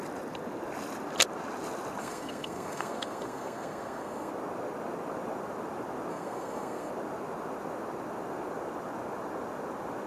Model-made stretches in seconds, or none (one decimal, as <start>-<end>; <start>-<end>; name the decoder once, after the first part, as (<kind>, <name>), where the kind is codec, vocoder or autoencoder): 2.0-4.3 (codec, SNAC); 6.1-6.9